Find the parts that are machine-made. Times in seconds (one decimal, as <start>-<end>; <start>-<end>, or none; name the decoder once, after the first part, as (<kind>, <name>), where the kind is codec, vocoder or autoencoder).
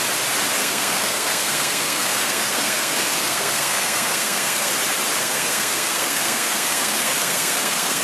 0.6-4.7 (codec, SNAC); 5.2-8.0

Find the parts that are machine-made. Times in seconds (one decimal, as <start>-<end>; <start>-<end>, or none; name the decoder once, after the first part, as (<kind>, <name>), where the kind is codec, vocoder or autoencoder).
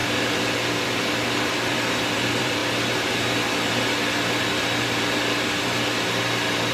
0.8-2.6 (vocoder, BigVGAN v2)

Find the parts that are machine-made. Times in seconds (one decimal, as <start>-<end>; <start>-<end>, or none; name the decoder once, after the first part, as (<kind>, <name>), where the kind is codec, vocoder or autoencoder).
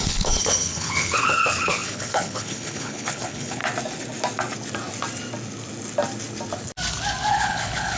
0.0-3.6 (codec, HILCodec); 7.3-8.0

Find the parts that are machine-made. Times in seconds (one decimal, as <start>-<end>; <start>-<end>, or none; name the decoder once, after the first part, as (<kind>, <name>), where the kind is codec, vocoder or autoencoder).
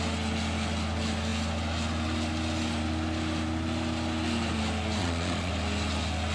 5.0-5.5 (vocoder, Vocos)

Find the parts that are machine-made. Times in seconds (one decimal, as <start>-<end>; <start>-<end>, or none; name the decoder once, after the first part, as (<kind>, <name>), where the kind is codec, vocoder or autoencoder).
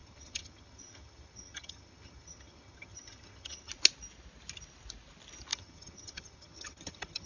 0.0-3.7 (vocoder, HiFi-GAN); 5.5-7.3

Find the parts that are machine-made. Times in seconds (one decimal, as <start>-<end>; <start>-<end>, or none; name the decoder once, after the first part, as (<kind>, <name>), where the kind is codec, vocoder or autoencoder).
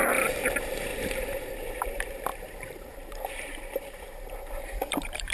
0.0-0.9 (vocoder, BigVGAN v2); 1.5-5.3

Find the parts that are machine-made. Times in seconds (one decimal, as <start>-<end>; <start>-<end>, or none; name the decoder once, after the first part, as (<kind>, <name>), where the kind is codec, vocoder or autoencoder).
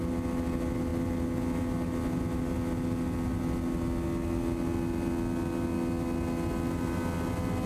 none